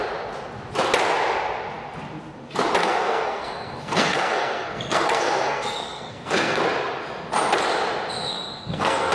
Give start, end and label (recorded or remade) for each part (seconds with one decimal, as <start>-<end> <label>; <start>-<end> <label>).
0.0-2.8 recorded; 2.8-6.6 remade; 6.6-8.3 recorded; 8.3-9.1 remade